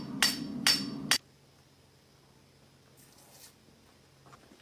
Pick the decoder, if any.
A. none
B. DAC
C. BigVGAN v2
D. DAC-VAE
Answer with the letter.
A